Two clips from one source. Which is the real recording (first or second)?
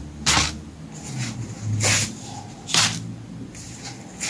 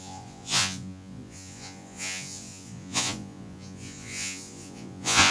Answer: first